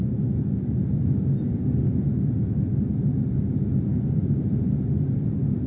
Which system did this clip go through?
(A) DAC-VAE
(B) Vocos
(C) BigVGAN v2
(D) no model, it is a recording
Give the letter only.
D